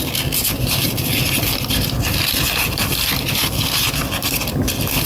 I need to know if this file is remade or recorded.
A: recorded